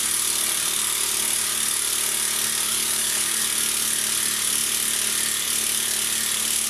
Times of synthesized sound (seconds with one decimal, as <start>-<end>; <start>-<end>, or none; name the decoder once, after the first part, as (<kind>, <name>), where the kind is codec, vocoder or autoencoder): 2.7-3.4 (codec, DAC)